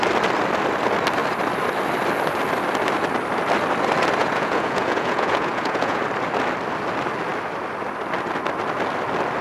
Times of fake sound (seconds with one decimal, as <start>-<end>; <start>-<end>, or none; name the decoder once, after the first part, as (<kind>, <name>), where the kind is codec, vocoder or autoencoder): 4.2-6.0 (vocoder, Vocos)